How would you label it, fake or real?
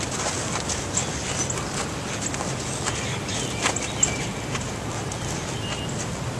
real